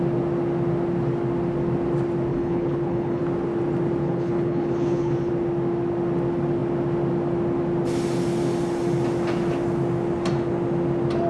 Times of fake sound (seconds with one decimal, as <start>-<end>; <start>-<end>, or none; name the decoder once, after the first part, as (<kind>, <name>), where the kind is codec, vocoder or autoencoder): 2.3-3.2 (codec, HILCodec); 4.0-5.3